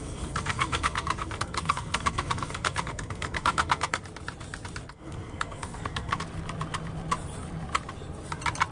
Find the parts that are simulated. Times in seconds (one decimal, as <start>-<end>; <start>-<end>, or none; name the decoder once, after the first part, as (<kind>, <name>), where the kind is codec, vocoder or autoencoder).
0.0-4.0 (codec, SNAC); 4.9-6.2